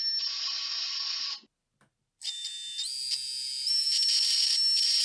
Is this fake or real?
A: real